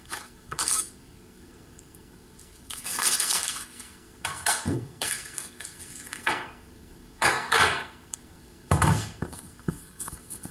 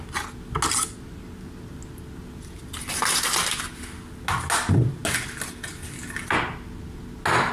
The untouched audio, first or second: second